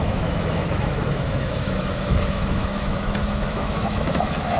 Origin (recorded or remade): remade